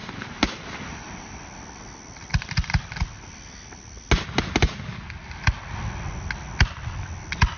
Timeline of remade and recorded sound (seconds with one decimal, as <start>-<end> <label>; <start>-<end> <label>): 0.0-1.4 remade; 1.4-7.6 recorded